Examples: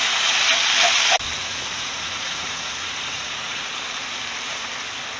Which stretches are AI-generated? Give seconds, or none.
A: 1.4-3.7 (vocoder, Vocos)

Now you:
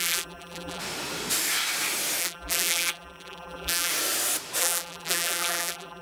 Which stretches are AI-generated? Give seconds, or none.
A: 0.0-0.8 (vocoder, BigVGAN v2); 2.2-3.9; 4.6-6.0

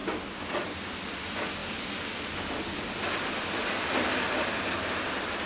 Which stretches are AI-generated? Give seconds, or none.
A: none

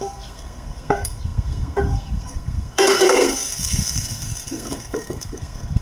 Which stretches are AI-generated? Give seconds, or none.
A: 0.0-5.8 (codec, SNAC)

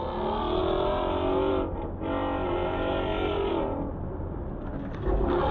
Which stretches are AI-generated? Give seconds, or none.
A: none

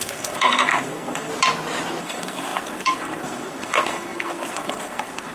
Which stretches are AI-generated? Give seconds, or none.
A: 0.0-1.3 (codec, SNAC); 2.0-5.3

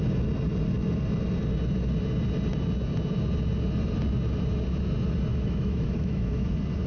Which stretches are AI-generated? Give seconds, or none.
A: 5.3-6.5 (autoencoder, DAC-VAE)

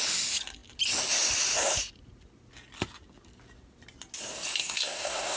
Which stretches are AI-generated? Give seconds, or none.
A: 4.6-5.4 (codec, SNAC)